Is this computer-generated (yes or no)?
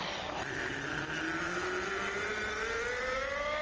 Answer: no